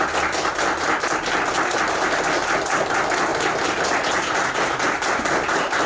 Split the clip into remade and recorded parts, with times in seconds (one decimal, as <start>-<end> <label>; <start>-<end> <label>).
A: 0.0-5.9 recorded

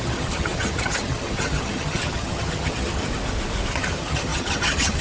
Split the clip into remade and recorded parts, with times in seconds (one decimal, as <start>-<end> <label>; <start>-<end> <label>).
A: 0.0-3.0 remade; 3.0-3.7 recorded; 3.7-5.0 remade